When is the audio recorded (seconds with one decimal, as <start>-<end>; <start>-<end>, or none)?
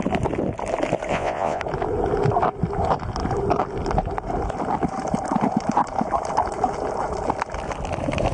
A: 0.0-1.1; 1.6-8.3